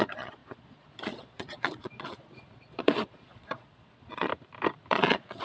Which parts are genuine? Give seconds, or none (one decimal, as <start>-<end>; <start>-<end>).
4.3-4.9